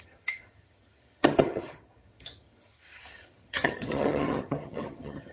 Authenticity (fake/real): fake